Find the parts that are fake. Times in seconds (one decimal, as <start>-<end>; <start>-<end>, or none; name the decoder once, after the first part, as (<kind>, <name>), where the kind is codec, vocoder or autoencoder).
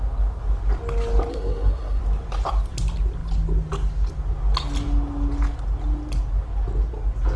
1.3-2.0 (codec, SNAC)